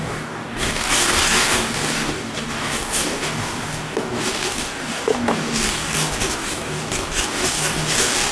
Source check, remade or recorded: remade